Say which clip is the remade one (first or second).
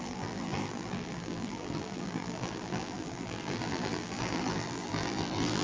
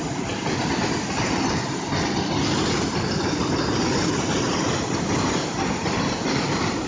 first